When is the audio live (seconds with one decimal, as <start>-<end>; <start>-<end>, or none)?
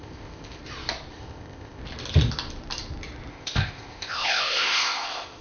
0.6-1.1; 1.8-3.3